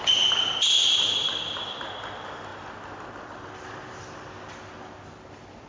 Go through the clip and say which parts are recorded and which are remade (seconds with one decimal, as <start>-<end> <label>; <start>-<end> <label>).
0.0-5.7 recorded